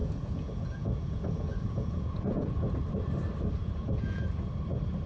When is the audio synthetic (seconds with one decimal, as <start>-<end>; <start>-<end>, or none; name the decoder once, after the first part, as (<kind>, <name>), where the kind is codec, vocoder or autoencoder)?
0.0-2.8 (vocoder, Vocos); 3.6-4.3